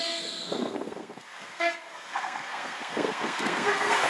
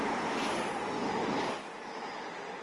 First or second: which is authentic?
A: second